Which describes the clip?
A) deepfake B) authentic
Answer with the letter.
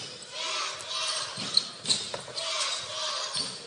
B